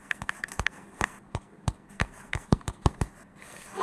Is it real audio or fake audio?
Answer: fake